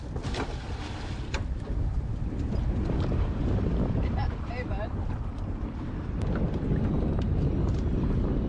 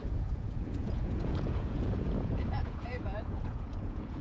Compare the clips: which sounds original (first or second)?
first